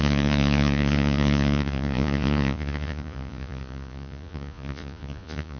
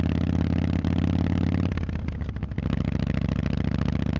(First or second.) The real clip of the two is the second